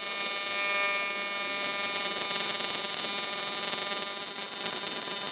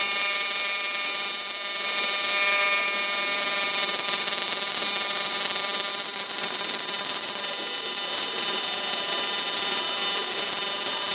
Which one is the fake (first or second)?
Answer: second